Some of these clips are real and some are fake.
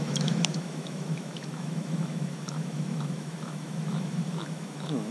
fake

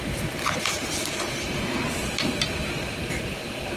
real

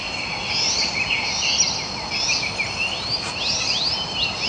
real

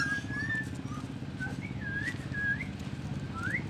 real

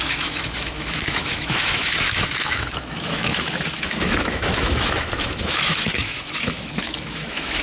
fake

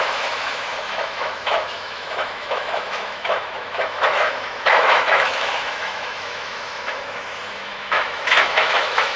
fake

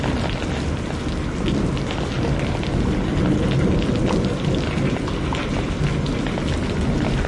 real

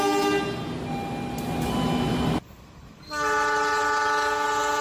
real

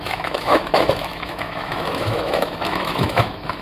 fake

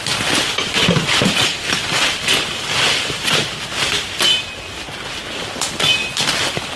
real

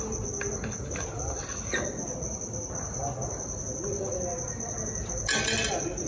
real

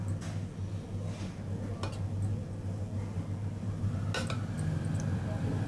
real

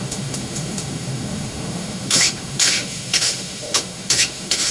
fake